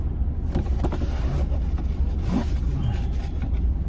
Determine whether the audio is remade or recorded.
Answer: recorded